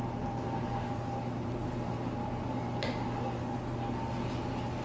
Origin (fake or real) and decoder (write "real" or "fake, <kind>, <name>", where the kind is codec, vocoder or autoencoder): real